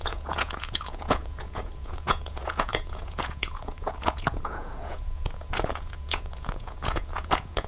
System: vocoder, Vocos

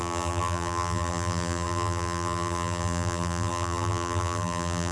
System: vocoder, BigVGAN v2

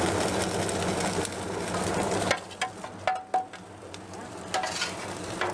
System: none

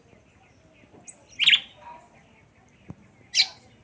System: none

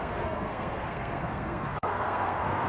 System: codec, SNAC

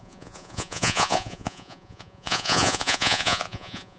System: vocoder, Vocos